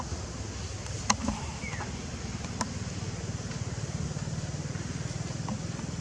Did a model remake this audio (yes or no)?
no